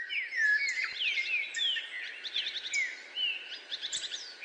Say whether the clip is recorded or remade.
recorded